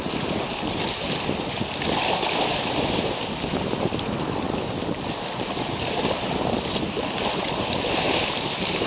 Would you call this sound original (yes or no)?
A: yes